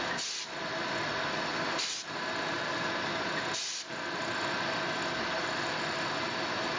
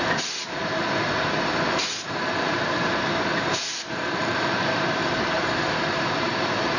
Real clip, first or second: first